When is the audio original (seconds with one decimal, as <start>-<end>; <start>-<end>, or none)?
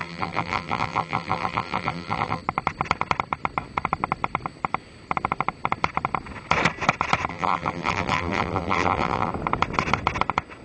2.4-7.3; 9.3-10.6